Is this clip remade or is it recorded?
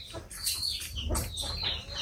recorded